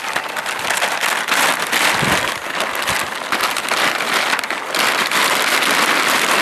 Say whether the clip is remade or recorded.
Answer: recorded